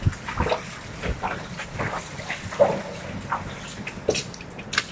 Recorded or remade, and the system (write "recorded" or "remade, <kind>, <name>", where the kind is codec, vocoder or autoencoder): recorded